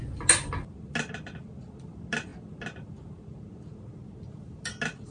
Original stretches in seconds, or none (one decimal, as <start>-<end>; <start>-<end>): 0.0-5.1